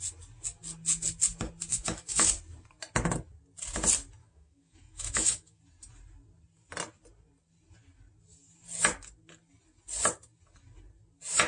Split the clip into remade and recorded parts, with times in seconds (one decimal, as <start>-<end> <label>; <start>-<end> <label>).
0.0-1.7 recorded; 1.7-2.3 remade; 2.3-4.2 recorded; 4.2-5.6 remade; 5.6-11.5 recorded